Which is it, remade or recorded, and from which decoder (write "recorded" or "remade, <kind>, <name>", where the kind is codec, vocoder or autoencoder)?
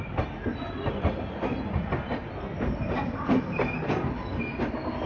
recorded